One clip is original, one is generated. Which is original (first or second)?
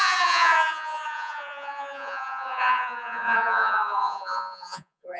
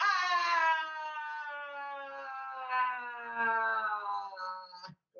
second